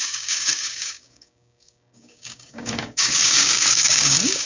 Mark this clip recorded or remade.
remade